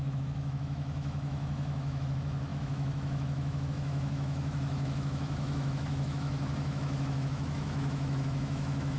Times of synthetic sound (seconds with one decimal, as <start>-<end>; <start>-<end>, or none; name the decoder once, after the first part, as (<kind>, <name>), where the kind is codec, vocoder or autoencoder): 0.0-9.0 (autoencoder, DAC-VAE)